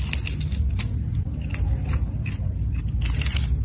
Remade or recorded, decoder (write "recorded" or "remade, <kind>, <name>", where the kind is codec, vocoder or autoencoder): recorded